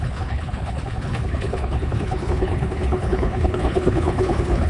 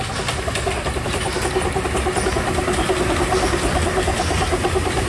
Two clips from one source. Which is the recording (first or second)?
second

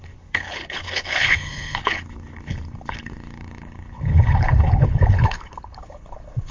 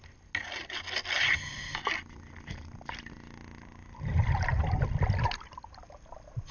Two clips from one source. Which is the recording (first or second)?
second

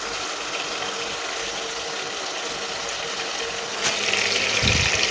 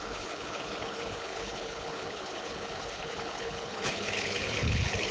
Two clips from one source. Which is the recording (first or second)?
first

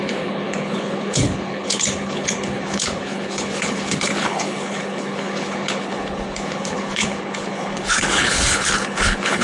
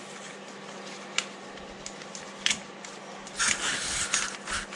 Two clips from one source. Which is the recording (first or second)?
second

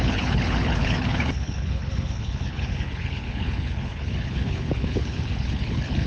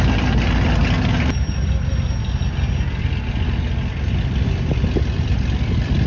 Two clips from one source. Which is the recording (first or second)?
second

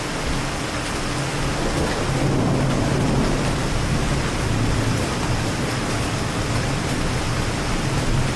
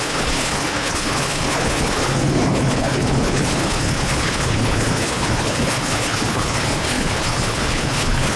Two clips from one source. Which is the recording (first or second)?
first